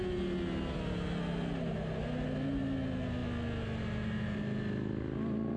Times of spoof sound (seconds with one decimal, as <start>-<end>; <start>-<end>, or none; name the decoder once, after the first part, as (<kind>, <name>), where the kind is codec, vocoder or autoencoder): none